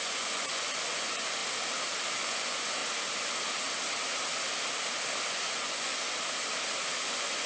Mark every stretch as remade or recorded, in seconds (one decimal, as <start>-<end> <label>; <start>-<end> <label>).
0.0-1.4 remade; 1.4-2.2 recorded; 2.2-2.8 remade; 2.8-5.3 recorded; 5.3-5.9 remade; 5.9-7.0 recorded; 7.0-7.5 remade